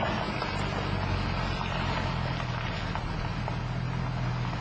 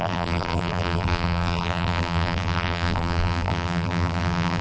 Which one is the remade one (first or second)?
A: second